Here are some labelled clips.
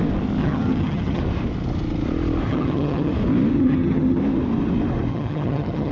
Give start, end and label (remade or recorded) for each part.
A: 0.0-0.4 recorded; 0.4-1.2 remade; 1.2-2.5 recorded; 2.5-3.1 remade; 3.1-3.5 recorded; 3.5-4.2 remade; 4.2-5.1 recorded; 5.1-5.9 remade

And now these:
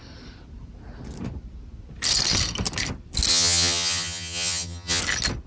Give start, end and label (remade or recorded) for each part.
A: 0.0-3.3 recorded; 3.3-5.0 remade; 5.0-5.5 recorded

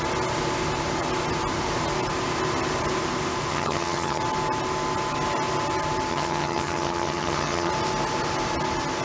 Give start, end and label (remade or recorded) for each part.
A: 0.0-3.5 recorded; 3.5-4.2 remade; 4.2-6.1 recorded; 6.1-7.7 remade; 7.7-9.0 recorded

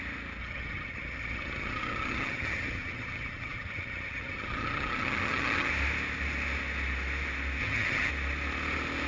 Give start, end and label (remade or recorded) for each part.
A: 0.0-0.4 recorded; 0.4-5.7 remade; 5.7-7.6 recorded; 7.6-8.1 remade; 8.1-9.1 recorded

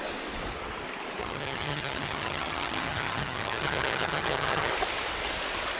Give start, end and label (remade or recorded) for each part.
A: 0.0-1.2 recorded; 1.2-4.7 remade; 4.7-5.8 recorded

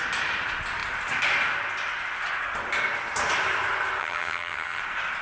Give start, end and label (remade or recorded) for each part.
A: 0.0-4.0 recorded; 4.0-4.8 remade; 4.8-5.2 recorded